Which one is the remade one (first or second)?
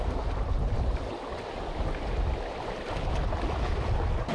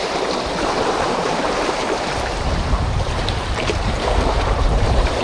second